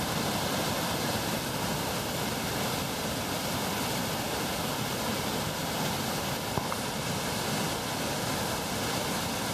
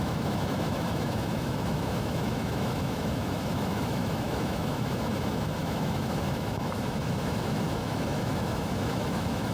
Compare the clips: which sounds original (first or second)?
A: first